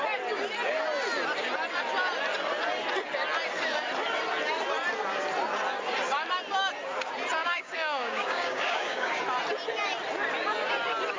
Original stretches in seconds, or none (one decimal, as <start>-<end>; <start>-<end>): 0.0-7.4; 9.2-11.2